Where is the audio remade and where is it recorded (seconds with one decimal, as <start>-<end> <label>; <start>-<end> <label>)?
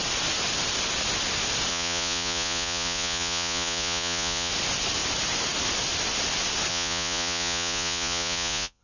0.0-1.7 recorded; 1.7-4.5 remade; 4.5-6.7 recorded; 6.7-8.8 remade